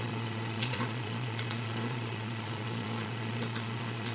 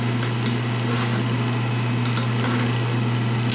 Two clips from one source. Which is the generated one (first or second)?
first